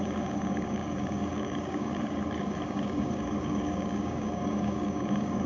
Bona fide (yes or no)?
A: no